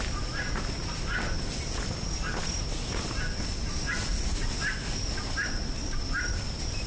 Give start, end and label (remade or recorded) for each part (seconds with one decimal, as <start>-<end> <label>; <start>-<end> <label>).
0.0-6.9 recorded

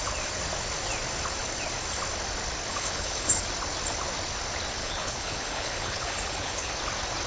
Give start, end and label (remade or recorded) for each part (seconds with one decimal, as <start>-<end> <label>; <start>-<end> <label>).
0.0-2.7 recorded; 2.7-3.4 remade; 3.4-4.8 recorded; 4.8-6.7 remade; 6.7-7.3 recorded

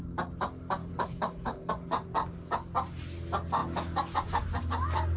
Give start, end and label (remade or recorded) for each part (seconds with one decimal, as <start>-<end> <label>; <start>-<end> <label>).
0.0-0.8 recorded; 0.8-1.7 remade; 1.7-5.2 recorded

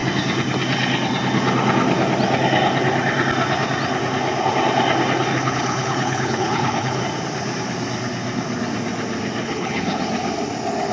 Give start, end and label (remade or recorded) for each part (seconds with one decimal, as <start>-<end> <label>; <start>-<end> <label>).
0.0-5.3 recorded; 5.3-7.0 remade; 7.0-9.4 recorded; 9.4-10.0 remade; 10.0-10.9 recorded